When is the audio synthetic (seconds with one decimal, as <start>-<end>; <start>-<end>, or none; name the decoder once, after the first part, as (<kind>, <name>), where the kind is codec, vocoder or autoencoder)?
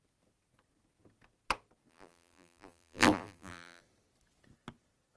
1.9-3.8 (vocoder, BigVGAN v2)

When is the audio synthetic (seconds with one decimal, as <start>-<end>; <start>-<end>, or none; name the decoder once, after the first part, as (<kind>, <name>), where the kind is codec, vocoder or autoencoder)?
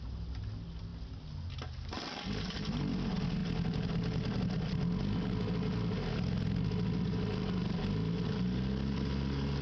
none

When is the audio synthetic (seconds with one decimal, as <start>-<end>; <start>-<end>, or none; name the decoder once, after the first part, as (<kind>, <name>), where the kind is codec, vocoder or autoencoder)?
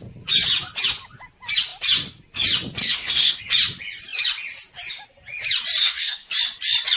2.8-3.4 (codec, SNAC); 5.8-6.3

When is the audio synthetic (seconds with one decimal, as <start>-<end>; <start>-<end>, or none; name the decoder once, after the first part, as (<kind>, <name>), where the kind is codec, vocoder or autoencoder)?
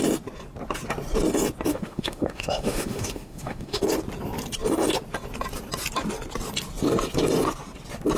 1.7-3.8 (autoencoder, DAC-VAE)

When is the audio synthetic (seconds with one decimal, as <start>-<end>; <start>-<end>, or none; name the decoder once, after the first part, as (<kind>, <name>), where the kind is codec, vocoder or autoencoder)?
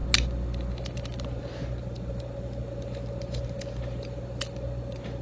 none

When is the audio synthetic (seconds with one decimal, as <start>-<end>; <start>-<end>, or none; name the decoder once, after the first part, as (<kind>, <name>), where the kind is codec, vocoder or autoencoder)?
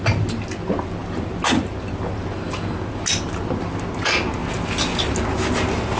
none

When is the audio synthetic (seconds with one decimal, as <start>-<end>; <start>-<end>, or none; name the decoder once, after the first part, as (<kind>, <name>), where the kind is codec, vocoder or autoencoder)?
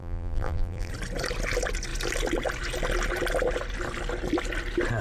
0.0-0.9 (vocoder, BigVGAN v2)